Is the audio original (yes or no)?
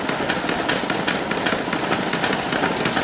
yes